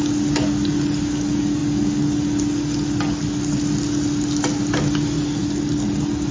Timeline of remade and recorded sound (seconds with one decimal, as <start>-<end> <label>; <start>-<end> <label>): 0.0-6.3 recorded